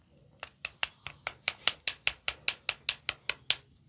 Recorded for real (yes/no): yes